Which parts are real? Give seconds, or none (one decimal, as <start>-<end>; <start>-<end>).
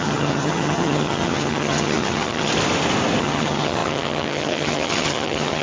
2.5-3.2